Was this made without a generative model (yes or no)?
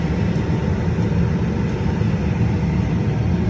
yes